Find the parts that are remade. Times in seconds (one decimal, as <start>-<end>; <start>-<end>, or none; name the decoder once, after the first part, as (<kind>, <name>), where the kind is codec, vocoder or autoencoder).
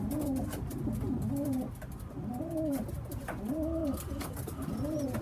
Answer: none